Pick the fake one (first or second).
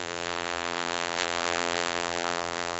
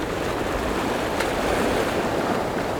first